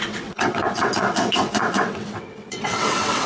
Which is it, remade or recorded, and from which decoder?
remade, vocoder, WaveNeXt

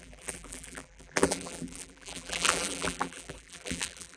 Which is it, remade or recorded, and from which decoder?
remade, vocoder, BigVGAN v2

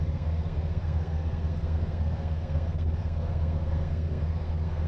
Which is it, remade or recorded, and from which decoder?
remade, codec, SNAC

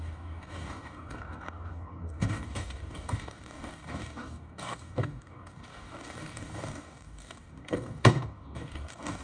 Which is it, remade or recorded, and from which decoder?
remade, codec, DAC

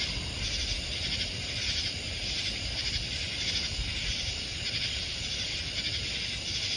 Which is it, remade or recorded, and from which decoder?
recorded